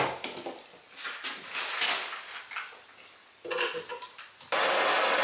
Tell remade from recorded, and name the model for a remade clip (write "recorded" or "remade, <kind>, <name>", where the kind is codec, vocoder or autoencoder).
recorded